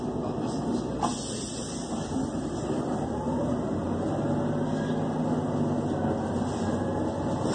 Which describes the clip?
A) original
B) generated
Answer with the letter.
A